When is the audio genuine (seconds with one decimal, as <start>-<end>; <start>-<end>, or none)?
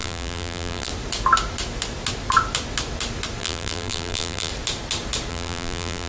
0.9-3.4; 4.5-5.3